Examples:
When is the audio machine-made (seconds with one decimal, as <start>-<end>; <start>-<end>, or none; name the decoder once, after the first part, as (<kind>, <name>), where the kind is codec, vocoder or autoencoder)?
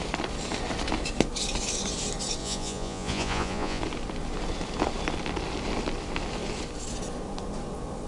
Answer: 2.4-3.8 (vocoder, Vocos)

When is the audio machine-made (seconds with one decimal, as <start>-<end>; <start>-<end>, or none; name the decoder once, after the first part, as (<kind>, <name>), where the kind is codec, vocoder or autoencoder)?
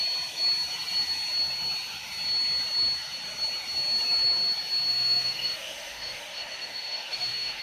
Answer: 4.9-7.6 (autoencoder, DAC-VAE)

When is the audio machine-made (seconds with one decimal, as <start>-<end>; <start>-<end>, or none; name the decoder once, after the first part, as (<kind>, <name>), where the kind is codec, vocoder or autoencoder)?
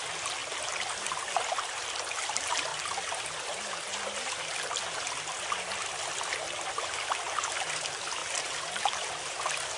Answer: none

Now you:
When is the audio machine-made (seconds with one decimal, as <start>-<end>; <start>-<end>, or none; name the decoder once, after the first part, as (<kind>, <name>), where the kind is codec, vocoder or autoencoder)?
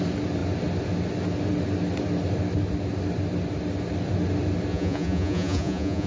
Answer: 4.7-6.1 (vocoder, Vocos)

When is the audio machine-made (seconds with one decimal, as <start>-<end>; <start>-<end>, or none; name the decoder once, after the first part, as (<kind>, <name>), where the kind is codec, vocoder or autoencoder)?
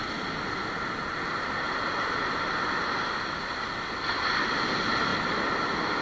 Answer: none